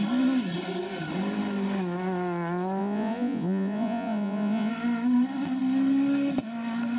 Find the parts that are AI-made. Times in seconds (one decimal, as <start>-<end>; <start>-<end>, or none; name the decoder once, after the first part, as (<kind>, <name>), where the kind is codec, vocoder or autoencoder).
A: 2.8-4.7 (vocoder, Vocos)